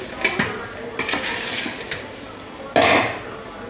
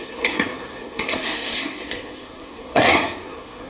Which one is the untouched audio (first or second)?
first